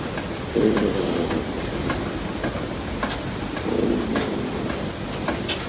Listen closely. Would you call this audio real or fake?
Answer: real